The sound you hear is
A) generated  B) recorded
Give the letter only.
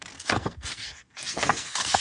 A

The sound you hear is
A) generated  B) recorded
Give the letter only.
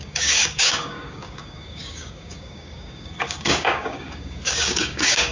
A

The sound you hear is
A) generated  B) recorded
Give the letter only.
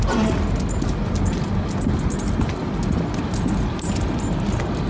B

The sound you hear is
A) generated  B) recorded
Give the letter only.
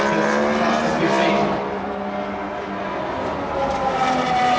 B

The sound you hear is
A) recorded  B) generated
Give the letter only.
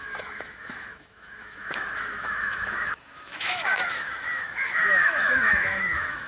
B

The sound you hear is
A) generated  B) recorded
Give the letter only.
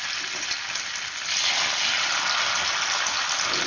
B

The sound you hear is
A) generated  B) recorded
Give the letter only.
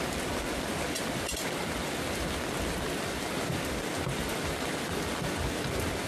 B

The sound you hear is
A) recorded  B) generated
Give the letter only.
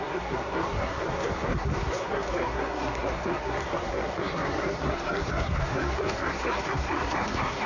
B